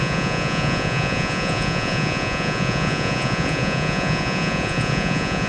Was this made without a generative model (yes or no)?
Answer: no